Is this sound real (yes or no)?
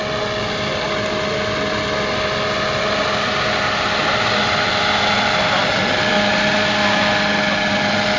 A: yes